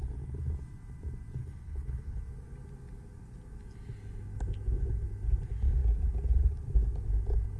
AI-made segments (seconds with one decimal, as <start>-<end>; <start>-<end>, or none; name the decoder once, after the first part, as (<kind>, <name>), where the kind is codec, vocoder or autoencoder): 1.4-2.2 (codec, HILCodec)